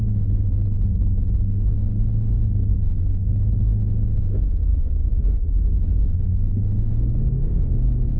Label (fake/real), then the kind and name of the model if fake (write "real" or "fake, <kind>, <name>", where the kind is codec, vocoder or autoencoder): fake, autoencoder, DAC-VAE